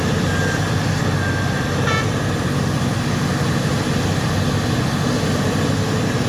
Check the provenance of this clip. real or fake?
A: real